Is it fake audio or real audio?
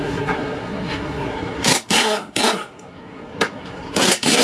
fake